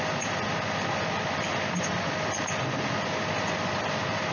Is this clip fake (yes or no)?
no